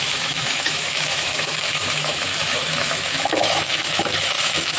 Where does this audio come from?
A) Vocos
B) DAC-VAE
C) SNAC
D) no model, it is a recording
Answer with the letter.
B